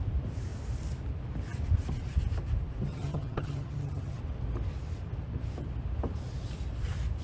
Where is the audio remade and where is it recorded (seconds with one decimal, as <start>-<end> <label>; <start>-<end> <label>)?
0.0-2.9 recorded; 2.9-4.2 remade; 4.2-7.2 recorded